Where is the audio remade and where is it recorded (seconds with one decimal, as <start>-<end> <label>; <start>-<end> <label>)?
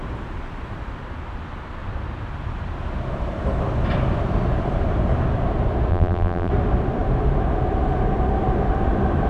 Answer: 0.0-5.9 recorded; 5.9-6.5 remade; 6.5-9.3 recorded